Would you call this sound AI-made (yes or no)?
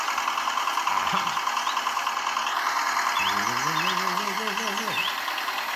no